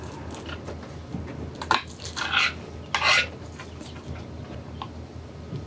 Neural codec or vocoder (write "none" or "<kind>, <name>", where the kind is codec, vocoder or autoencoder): none